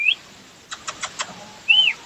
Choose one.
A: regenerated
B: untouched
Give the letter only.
B